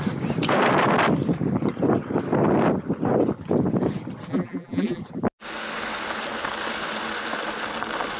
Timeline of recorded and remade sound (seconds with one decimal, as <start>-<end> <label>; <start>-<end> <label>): 0.0-4.3 recorded; 4.3-5.0 remade; 5.0-8.2 recorded